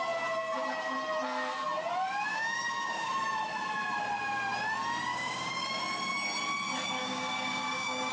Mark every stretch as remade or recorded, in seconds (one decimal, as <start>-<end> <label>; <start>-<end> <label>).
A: 0.0-2.3 recorded; 2.3-3.1 remade; 3.1-5.1 recorded; 5.1-5.8 remade; 5.8-7.0 recorded; 7.0-8.1 remade